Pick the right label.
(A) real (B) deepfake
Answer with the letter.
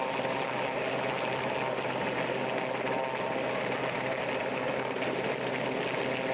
A